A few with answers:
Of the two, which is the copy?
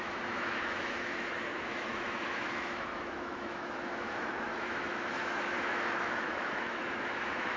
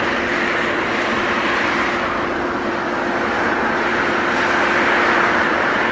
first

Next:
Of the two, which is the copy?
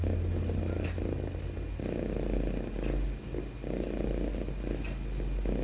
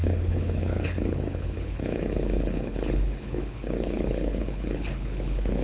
second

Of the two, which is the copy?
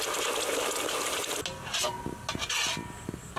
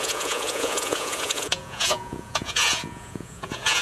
second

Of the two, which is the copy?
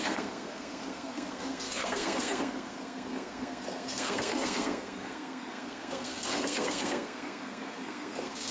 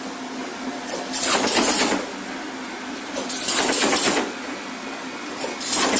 first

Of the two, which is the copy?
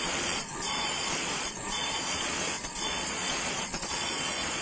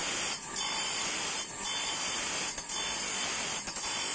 first